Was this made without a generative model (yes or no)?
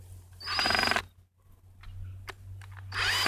yes